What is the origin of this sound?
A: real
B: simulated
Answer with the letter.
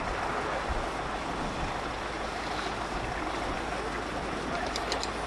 A